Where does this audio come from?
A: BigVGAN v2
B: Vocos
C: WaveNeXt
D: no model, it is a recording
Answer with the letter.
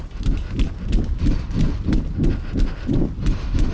D